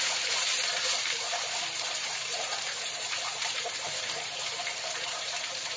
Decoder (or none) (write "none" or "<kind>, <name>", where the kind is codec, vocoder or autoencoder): vocoder, BigVGAN v2